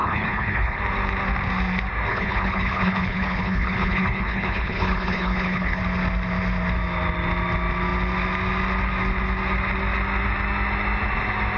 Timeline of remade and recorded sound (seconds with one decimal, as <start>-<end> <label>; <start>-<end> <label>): 0.0-0.8 remade; 0.8-2.1 recorded; 2.1-5.8 remade; 5.8-11.6 recorded